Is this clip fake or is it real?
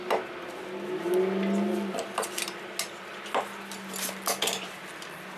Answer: real